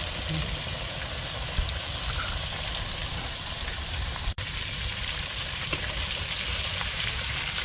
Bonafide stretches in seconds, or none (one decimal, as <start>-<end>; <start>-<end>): 0.0-3.0